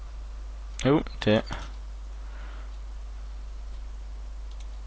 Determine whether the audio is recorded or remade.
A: recorded